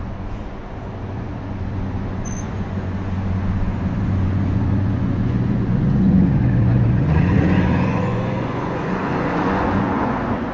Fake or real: fake